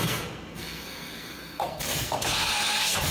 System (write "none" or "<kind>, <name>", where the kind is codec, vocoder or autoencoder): codec, SNAC